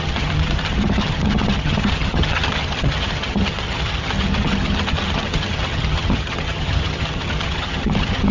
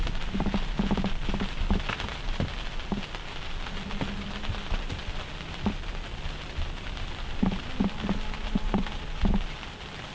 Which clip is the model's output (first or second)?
first